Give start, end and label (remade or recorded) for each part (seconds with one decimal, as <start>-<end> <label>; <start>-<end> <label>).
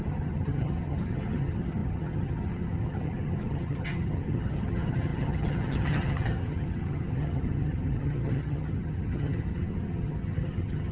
0.0-10.9 remade